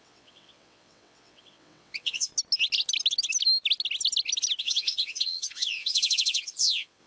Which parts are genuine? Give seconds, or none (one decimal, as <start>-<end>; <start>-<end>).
2.3-4.6

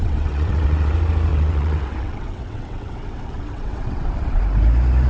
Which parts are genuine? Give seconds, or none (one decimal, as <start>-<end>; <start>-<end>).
0.9-1.3; 4.4-5.1

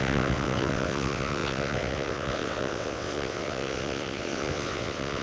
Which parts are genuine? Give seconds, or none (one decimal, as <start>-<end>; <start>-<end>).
none

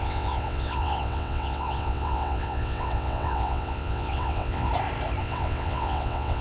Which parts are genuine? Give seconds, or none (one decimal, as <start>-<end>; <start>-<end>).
4.7-5.2

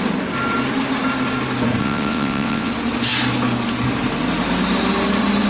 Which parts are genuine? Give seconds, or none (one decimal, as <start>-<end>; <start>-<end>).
0.0-1.8; 2.7-5.5

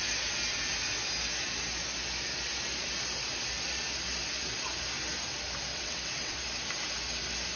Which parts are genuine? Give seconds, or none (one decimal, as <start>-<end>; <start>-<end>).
0.0-5.7; 6.4-7.6